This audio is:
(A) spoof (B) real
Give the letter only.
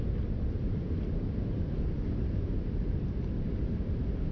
A